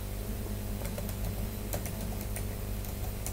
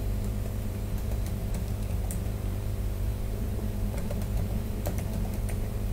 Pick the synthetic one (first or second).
second